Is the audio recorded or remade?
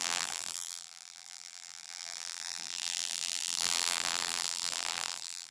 remade